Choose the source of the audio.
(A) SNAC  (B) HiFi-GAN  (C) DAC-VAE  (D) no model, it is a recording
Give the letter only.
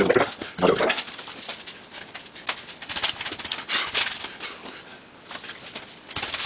D